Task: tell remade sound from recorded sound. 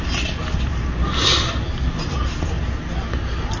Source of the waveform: recorded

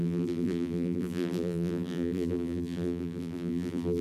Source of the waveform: remade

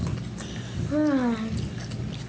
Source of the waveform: recorded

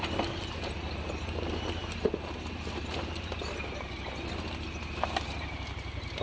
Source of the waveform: recorded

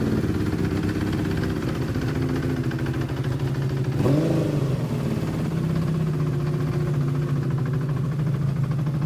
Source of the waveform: recorded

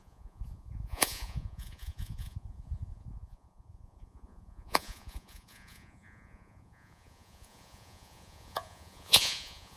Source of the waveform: remade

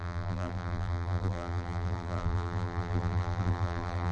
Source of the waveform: remade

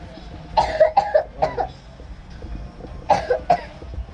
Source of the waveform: recorded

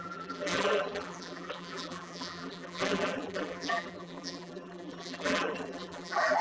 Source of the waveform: remade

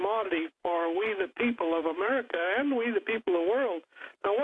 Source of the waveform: remade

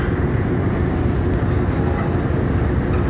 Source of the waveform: recorded